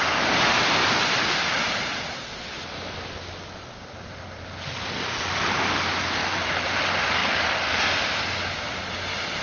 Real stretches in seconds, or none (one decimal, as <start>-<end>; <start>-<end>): 0.0-9.4